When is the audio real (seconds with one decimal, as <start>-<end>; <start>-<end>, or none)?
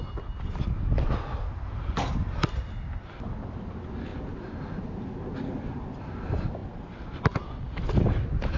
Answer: 0.0-8.6